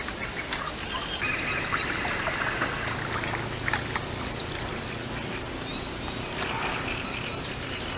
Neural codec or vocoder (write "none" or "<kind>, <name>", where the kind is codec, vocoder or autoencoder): none